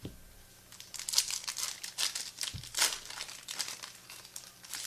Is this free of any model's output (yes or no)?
yes